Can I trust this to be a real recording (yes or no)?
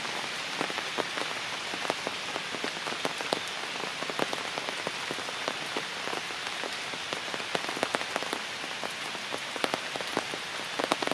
yes